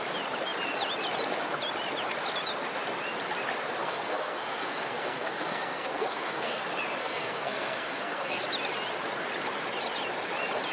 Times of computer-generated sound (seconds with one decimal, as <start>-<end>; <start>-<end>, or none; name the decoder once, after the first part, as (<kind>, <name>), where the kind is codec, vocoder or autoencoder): 3.8-6.6 (codec, SNAC); 7.0-8.4